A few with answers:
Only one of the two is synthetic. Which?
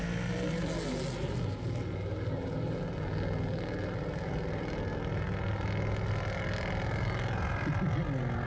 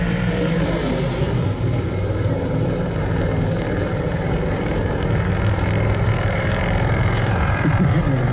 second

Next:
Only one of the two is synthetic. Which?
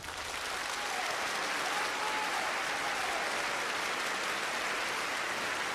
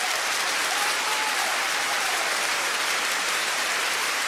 second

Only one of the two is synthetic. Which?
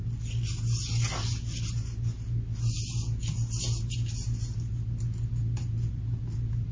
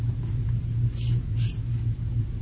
second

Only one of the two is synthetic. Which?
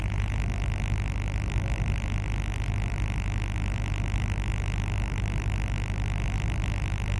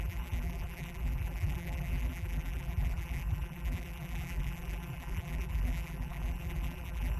second